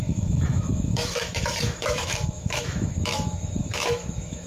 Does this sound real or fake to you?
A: fake